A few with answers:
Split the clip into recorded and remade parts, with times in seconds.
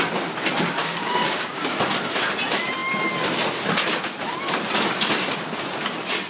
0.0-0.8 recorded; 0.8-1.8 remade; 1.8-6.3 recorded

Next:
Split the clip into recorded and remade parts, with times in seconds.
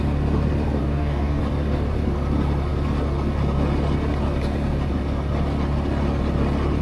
0.0-0.8 recorded; 0.8-1.4 remade; 1.4-6.8 recorded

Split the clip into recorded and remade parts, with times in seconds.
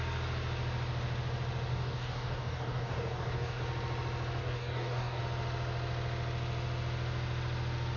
0.0-1.7 recorded; 1.7-3.6 remade; 3.6-4.4 recorded; 4.4-5.2 remade; 5.2-8.0 recorded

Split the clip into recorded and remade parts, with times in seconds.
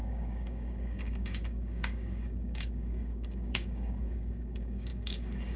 0.0-5.6 remade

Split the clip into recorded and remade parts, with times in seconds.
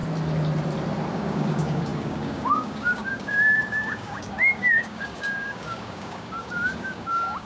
0.0-1.1 recorded; 1.1-7.5 remade